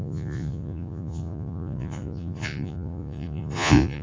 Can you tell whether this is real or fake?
fake